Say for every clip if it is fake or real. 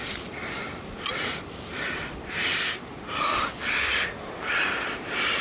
real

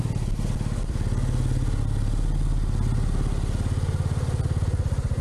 real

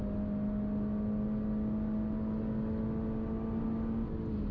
real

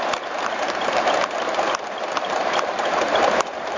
fake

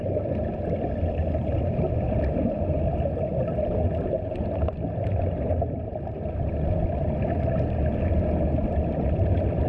real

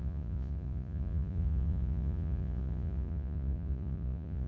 fake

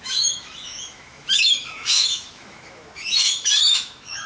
fake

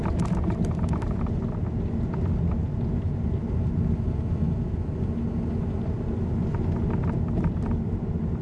real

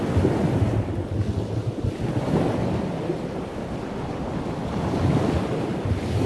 real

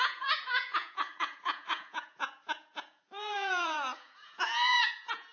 fake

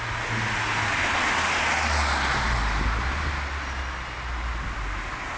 real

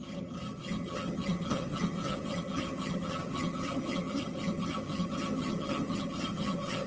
fake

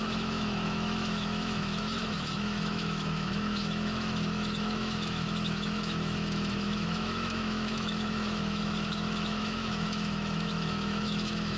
fake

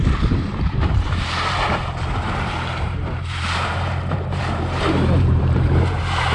fake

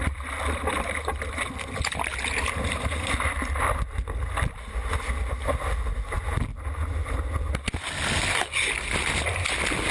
real